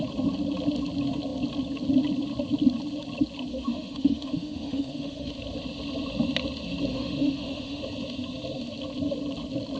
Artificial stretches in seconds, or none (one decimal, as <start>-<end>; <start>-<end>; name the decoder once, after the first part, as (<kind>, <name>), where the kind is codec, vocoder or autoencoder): 3.5-5.3 (autoencoder, DAC-VAE); 6.9-7.8